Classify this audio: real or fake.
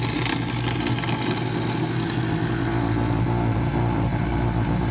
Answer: real